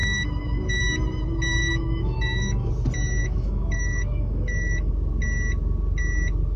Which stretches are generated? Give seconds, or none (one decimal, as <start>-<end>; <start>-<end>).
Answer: 0.0-0.8; 1.6-2.7; 3.2-4.9